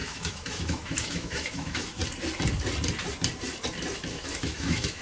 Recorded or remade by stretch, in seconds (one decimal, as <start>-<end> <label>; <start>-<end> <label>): 0.0-2.0 remade; 2.0-4.1 recorded; 4.1-5.0 remade